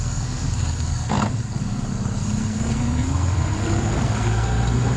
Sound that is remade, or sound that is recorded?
remade